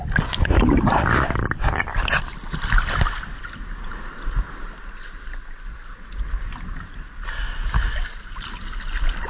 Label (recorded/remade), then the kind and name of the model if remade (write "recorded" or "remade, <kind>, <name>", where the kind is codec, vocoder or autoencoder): recorded